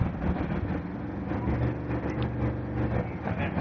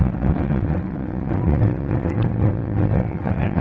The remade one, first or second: second